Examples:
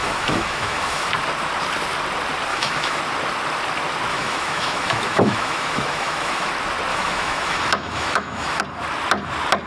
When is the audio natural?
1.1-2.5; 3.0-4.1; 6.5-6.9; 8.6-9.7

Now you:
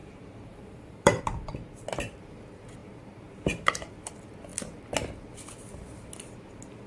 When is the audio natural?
1.2-2.8; 4.1-6.9

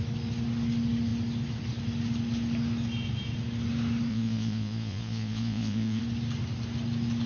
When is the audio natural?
0.0-4.1; 6.0-7.3